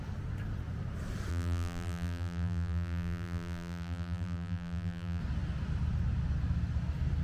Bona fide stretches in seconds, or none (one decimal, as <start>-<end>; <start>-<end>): 0.0-1.3; 5.2-7.2